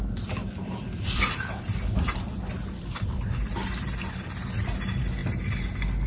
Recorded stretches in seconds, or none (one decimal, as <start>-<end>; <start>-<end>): 0.0-0.4; 4.1-6.1